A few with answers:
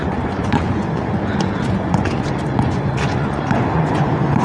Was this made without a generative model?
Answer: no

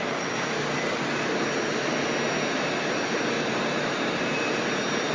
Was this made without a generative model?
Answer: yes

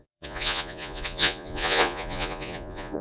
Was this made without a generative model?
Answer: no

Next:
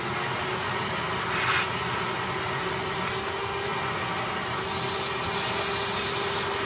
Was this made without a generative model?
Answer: yes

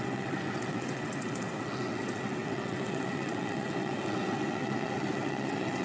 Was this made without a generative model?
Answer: no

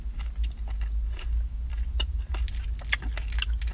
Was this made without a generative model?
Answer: yes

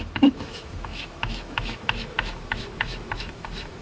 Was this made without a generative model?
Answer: no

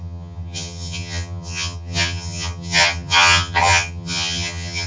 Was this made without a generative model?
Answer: no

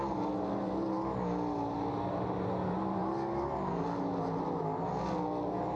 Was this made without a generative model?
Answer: yes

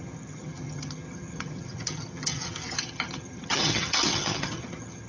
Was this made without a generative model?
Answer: no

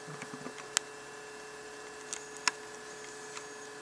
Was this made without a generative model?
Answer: yes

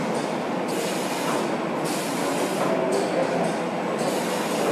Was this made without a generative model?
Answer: yes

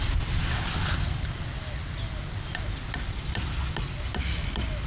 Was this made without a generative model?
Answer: yes